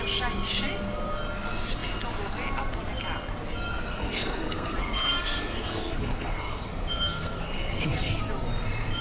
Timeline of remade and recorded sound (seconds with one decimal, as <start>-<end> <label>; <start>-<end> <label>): 0.0-3.9 recorded; 3.9-8.2 remade; 8.2-9.0 recorded